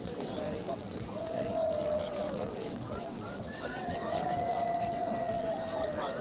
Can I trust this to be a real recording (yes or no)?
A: no